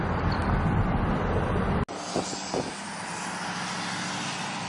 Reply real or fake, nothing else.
real